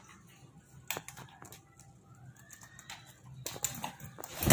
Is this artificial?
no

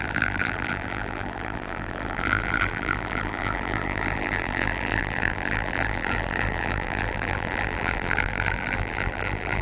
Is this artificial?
yes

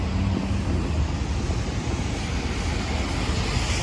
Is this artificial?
no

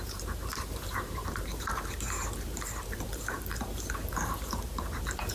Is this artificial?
yes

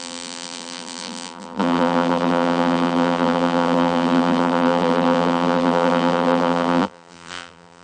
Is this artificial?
yes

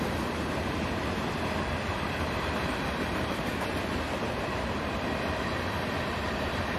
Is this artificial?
yes